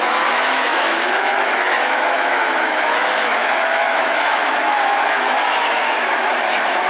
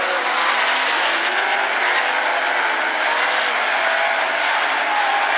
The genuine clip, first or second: second